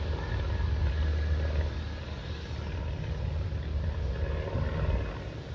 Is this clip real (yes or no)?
yes